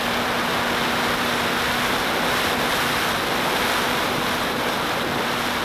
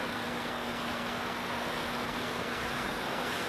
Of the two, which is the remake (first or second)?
second